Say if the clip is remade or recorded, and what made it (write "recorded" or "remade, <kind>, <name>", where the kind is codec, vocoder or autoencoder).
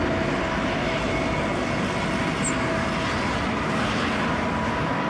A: recorded